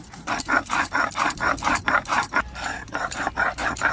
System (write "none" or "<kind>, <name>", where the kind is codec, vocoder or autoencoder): vocoder, BigVGAN v2